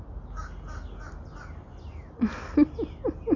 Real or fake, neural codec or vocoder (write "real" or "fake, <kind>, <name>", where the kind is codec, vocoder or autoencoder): real